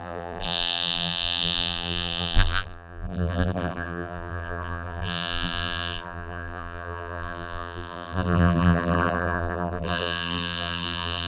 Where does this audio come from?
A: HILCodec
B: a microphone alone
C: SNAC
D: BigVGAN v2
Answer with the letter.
D